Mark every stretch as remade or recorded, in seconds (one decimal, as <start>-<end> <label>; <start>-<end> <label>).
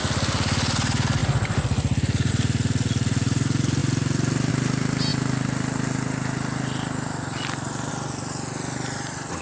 0.0-9.4 recorded